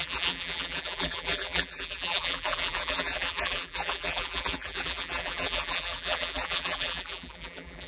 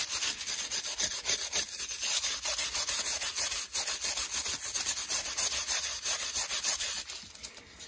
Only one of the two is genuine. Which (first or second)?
second